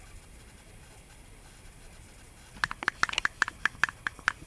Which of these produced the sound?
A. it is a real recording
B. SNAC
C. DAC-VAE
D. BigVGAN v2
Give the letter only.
A